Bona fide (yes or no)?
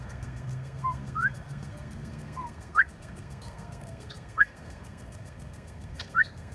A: no